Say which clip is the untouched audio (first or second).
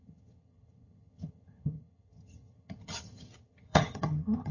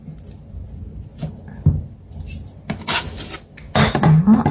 second